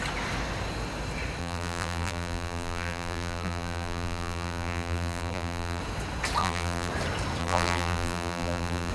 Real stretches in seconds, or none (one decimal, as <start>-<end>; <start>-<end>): 0.0-1.4; 5.8-6.4; 6.9-7.4